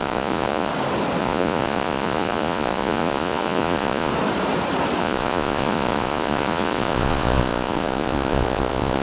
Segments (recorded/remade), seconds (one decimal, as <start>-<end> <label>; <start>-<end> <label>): 0.0-0.7 remade; 0.7-1.2 recorded; 1.2-4.1 remade; 4.1-5.0 recorded; 5.0-9.0 remade